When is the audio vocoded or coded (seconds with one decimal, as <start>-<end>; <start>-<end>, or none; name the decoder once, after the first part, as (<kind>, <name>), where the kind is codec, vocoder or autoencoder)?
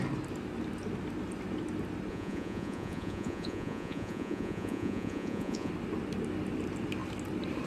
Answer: 2.1-5.7 (vocoder, Vocos)